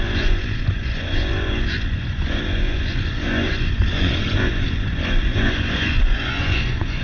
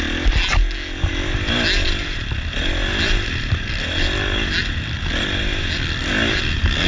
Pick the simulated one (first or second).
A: first